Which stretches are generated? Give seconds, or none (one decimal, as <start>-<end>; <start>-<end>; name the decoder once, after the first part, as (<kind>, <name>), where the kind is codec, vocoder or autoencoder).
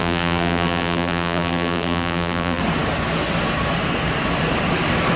0.0-2.6 (vocoder, BigVGAN v2)